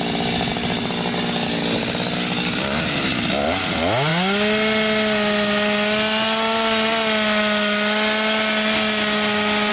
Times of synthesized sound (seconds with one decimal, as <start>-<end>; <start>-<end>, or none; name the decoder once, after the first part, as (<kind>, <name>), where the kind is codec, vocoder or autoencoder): none